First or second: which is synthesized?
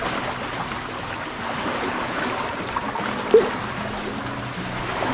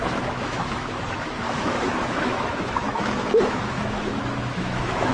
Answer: second